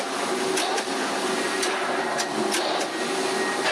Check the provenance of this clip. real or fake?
real